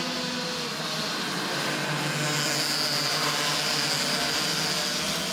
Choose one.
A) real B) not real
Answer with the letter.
A